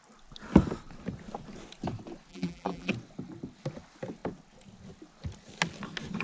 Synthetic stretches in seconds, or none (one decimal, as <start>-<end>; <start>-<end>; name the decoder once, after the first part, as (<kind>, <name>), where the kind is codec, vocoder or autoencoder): 2.3-2.9 (vocoder, BigVGAN v2)